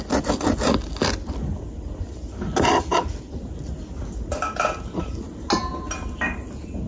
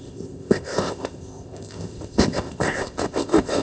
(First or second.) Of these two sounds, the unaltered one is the first